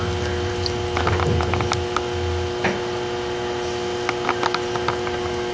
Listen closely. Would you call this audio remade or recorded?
recorded